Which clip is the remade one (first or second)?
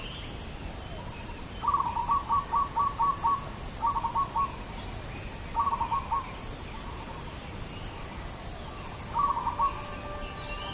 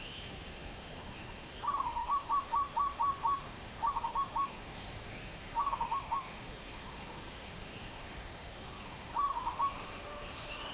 second